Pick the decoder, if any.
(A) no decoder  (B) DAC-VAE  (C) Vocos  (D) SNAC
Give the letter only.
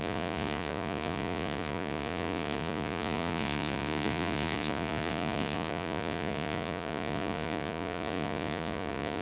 C